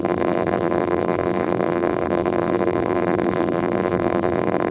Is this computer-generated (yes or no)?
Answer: yes